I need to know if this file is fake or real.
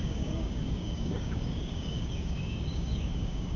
fake